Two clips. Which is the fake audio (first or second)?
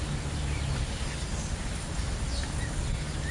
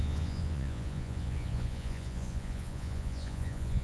second